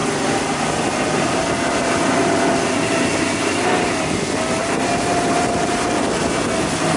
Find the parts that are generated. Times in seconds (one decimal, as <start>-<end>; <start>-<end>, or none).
4.6-5.9

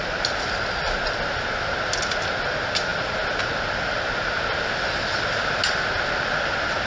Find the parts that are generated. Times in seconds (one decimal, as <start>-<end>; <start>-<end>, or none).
none